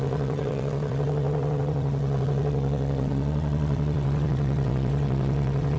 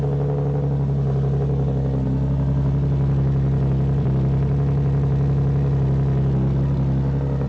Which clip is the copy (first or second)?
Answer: first